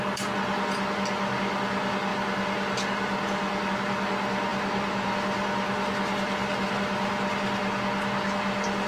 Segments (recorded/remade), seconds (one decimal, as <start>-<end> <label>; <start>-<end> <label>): 0.0-8.9 recorded